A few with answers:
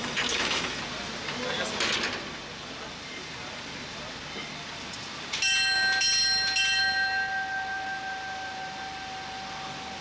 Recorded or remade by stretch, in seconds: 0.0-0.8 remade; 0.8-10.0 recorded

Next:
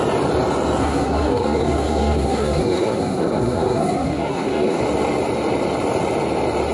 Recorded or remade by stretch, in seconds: 0.0-0.8 recorded; 0.8-4.8 remade; 4.8-6.7 recorded

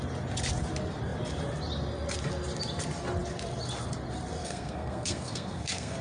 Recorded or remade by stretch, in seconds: 0.0-4.4 recorded; 4.4-6.0 remade

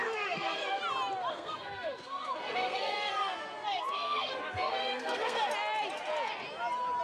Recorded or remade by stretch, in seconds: 0.0-0.8 remade; 0.8-1.3 recorded; 1.3-5.5 remade; 5.5-7.0 recorded

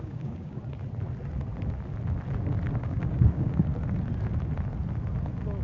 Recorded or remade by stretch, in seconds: 0.0-0.6 remade; 0.6-2.8 recorded; 2.8-3.7 remade; 3.7-5.6 recorded

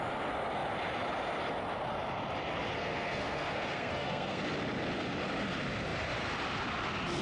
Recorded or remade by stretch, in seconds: 0.0-2.8 recorded; 2.8-4.4 remade; 4.4-7.2 recorded

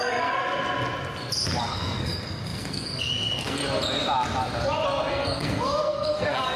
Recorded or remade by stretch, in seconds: 0.0-0.4 remade; 0.4-1.6 recorded; 1.6-3.6 remade; 3.6-5.1 recorded; 5.1-6.6 remade